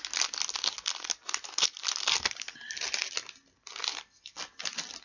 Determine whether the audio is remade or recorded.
recorded